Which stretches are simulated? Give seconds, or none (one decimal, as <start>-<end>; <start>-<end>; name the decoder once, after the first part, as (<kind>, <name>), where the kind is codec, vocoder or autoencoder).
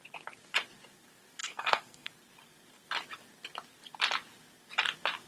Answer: 1.4-2.1 (codec, SNAC)